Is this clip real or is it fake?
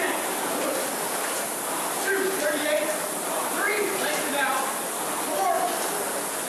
fake